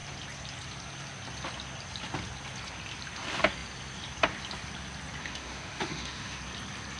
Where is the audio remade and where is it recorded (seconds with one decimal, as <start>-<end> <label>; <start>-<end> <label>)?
0.0-5.2 recorded; 5.2-6.4 remade; 6.4-7.0 recorded